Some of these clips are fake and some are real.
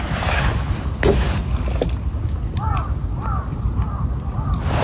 real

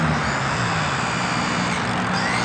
real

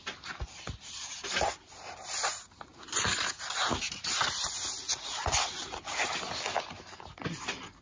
real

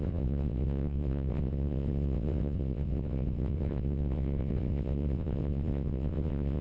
fake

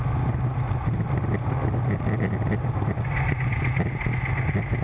real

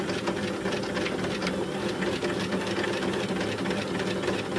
real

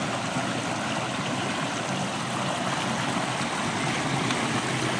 real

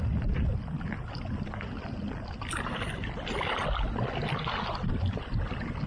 real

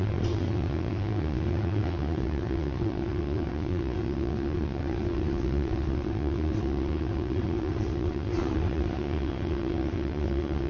fake